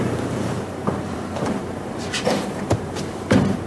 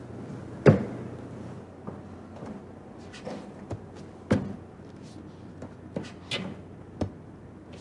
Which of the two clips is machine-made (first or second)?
first